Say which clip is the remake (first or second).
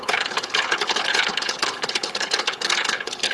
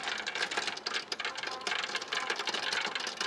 first